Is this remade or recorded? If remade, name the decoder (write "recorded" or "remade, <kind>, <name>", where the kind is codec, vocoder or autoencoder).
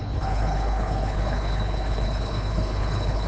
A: remade, codec, HILCodec